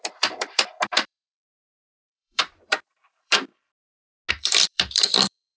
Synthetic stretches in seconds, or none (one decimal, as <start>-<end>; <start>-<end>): 0.0-3.5; 4.3-5.6